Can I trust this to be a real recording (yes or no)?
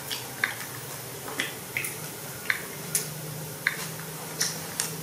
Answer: yes